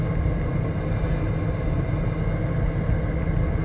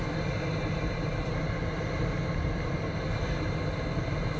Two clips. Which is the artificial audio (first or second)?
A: second